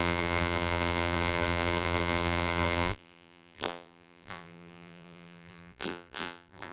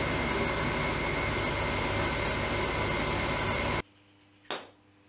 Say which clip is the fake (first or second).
first